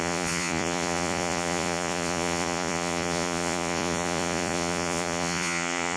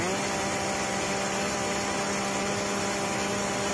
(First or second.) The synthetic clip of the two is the first